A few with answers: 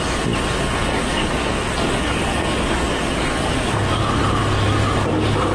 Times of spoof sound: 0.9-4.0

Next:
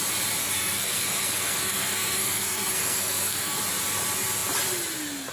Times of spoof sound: 0.4-3.6

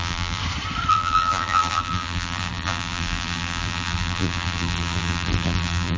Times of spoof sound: 0.0-0.4; 0.9-6.0

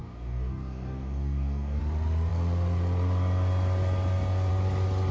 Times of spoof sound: 0.0-1.8

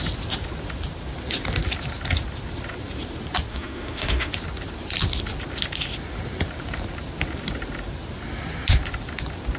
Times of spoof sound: 3.5-4.3